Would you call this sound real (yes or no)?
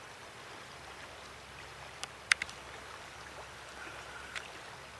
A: yes